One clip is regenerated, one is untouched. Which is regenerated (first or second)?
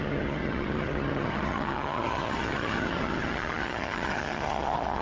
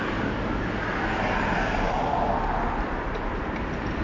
first